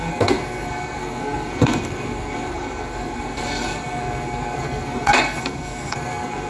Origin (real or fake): fake